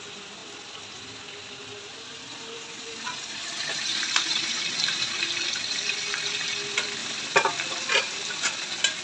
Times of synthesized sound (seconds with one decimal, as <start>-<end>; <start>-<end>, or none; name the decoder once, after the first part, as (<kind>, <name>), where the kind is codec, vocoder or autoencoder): 1.9-5.2 (vocoder, BigVGAN v2); 7.0-8.3